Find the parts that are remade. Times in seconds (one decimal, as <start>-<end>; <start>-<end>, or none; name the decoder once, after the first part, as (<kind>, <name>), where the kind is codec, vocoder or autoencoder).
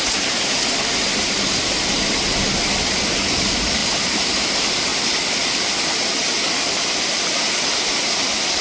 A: none